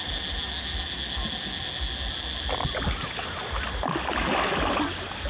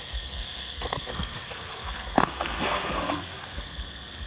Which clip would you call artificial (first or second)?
second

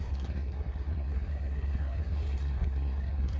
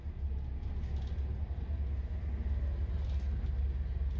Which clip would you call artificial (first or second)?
first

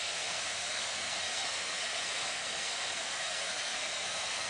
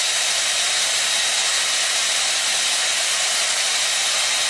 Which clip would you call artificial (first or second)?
first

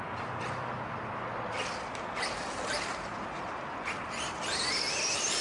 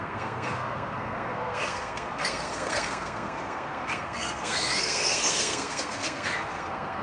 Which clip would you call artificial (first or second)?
second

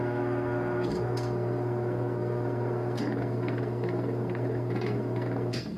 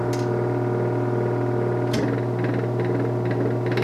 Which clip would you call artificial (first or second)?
first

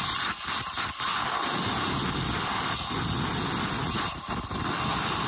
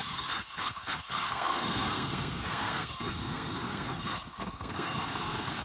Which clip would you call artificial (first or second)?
second